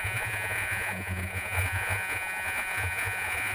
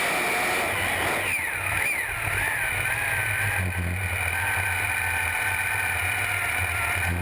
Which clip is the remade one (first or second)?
first